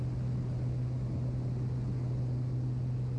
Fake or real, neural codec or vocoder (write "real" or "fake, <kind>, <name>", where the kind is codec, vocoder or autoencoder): real